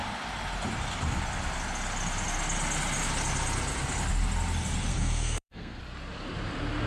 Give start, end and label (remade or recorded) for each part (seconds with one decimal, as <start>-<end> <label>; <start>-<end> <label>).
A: 0.0-4.9 recorded; 4.9-5.8 remade; 5.8-6.9 recorded